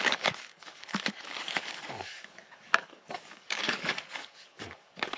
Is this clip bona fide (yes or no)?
no